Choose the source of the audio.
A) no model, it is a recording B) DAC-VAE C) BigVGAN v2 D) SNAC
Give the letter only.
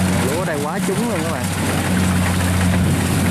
A